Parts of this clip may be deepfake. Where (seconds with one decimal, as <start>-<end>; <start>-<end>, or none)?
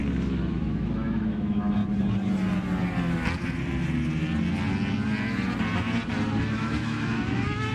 0.5-1.8; 6.4-7.7